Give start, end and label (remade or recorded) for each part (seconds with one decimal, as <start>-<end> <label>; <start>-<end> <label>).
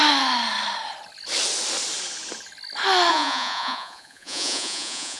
0.0-3.1 recorded; 3.1-5.2 remade